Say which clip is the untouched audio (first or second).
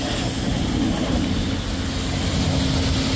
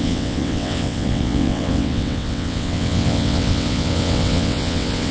first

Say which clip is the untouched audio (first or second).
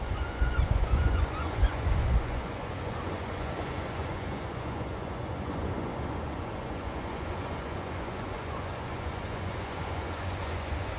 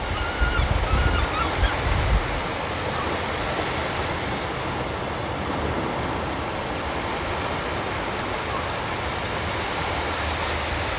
second